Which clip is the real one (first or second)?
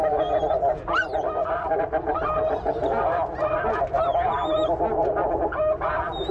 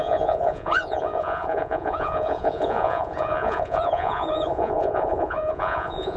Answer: first